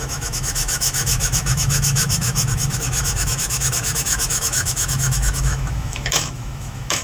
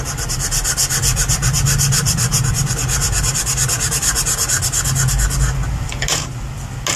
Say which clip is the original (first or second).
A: second